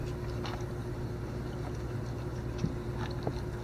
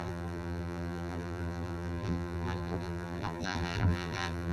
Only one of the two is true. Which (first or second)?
first